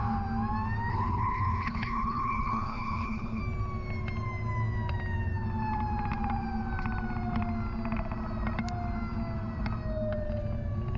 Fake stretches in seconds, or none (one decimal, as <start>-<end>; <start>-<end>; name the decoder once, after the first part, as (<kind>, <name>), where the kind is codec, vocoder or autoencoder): 0.9-3.4 (codec, HILCodec)